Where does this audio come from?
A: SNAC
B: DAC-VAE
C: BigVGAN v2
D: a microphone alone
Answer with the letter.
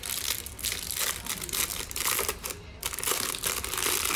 D